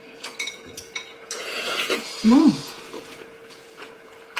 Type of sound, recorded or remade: remade